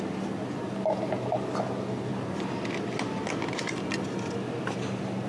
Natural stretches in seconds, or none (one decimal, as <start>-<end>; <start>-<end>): 0.0-5.3